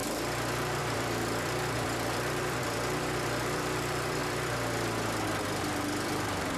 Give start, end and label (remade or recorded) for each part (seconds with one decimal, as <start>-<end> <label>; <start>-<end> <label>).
0.0-0.8 recorded; 0.8-6.6 remade

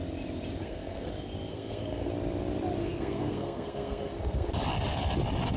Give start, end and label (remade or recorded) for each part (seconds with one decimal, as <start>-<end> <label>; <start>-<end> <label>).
0.0-0.6 recorded; 0.6-1.1 remade; 1.1-1.5 recorded; 1.5-2.1 remade; 2.1-2.8 recorded; 2.8-4.5 remade; 4.5-5.6 recorded

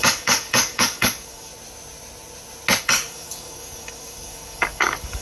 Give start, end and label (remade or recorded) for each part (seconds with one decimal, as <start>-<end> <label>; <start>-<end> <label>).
0.0-1.5 remade; 1.5-2.8 recorded; 2.8-5.2 remade

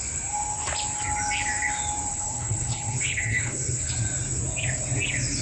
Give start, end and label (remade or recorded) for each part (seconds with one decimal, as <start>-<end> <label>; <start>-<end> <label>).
0.0-2.1 recorded; 2.1-3.9 remade; 3.9-5.4 recorded

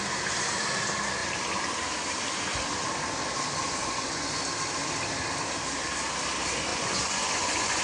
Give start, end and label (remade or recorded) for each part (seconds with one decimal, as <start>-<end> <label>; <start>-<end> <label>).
0.0-3.8 recorded; 3.8-4.4 remade; 4.4-6.7 recorded; 6.7-7.8 remade

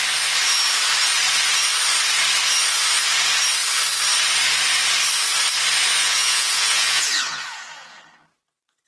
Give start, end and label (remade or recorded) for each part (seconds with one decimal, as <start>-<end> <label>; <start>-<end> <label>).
0.0-6.0 recorded; 6.0-8.0 remade; 8.0-8.9 recorded